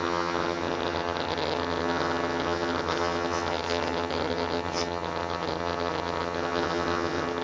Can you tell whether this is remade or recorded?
remade